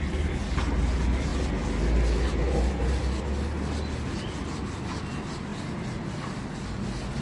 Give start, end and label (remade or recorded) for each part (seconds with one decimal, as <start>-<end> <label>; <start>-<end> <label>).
0.0-7.2 recorded